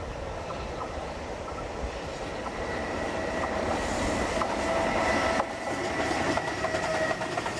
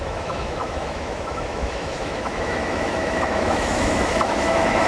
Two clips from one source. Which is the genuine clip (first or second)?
first